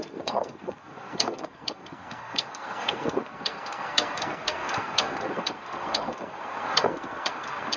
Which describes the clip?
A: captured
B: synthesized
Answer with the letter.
B